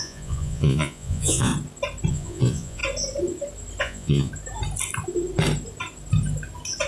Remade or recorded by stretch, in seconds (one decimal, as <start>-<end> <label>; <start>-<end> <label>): 0.0-1.5 remade; 1.5-2.1 recorded; 2.1-2.8 remade; 2.8-3.8 recorded; 3.8-4.3 remade; 4.3-6.9 recorded